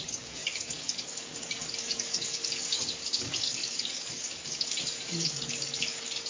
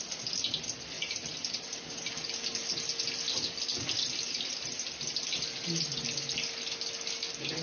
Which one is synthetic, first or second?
first